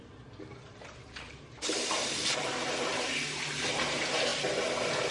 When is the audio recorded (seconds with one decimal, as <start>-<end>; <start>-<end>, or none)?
0.0-0.5; 3.6-5.1